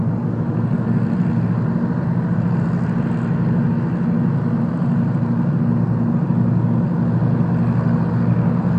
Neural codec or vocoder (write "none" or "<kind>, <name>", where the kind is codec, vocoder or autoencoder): none